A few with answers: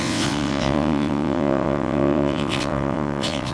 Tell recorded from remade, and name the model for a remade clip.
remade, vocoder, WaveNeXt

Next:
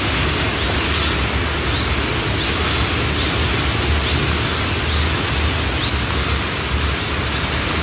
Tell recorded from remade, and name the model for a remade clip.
recorded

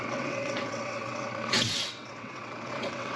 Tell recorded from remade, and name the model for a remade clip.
remade, vocoder, WaveNeXt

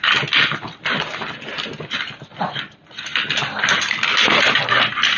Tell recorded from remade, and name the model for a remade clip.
recorded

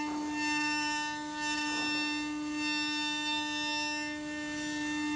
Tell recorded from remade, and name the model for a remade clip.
recorded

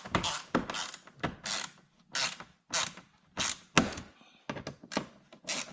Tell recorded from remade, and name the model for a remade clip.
recorded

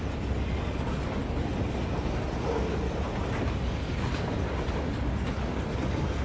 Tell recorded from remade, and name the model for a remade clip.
recorded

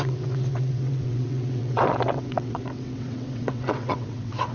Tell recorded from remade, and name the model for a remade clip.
remade, vocoder, WaveNeXt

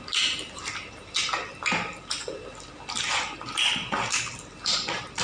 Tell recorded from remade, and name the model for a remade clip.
recorded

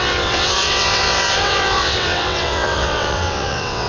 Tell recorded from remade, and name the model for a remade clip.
remade, vocoder, WaveNeXt